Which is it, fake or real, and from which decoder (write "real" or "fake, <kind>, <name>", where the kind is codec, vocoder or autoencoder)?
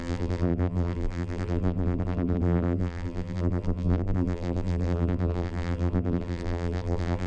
fake, vocoder, BigVGAN v2